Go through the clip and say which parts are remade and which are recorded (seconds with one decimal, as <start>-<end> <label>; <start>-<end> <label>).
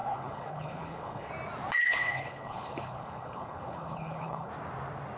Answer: 0.0-1.3 remade; 1.3-1.8 recorded; 1.8-4.5 remade; 4.5-5.2 recorded